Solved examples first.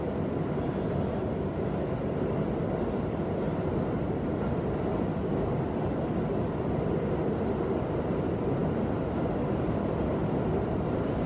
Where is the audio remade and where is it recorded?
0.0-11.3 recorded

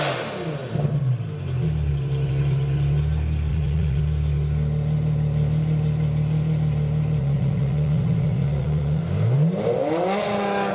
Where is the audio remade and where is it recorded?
0.0-3.5 recorded; 3.5-4.0 remade; 4.0-7.2 recorded; 7.2-9.0 remade; 9.0-10.7 recorded

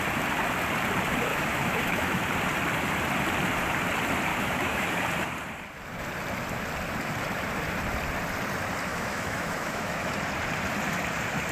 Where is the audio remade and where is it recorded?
0.0-1.3 recorded; 1.3-2.2 remade; 2.2-4.3 recorded; 4.3-5.0 remade; 5.0-8.9 recorded; 8.9-10.1 remade; 10.1-11.5 recorded